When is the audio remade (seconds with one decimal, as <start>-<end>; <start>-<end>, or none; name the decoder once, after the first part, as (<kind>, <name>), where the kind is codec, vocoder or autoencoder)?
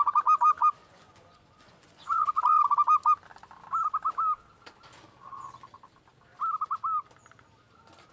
0.8-2.4 (vocoder, Vocos)